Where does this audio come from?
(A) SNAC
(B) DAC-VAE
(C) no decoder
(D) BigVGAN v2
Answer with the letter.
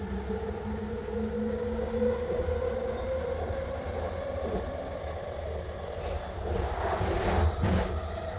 C